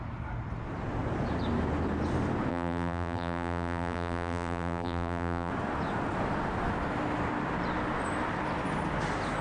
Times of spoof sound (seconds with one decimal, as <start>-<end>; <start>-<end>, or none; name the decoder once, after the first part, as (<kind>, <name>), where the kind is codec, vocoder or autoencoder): 2.5-5.5 (vocoder, BigVGAN v2)